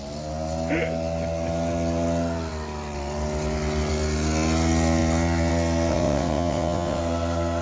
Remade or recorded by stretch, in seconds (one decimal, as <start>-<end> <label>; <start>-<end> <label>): 0.0-5.9 recorded; 5.9-7.0 remade; 7.0-7.6 recorded